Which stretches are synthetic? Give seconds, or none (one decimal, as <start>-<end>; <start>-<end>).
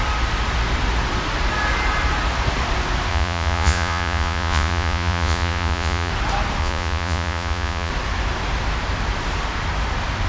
3.1-6.1; 6.6-7.9